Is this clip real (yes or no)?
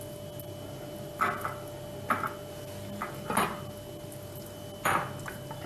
yes